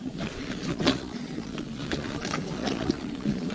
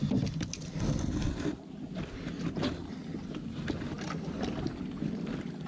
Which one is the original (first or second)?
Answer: second